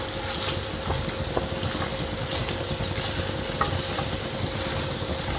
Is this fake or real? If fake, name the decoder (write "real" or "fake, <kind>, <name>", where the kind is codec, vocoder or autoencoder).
real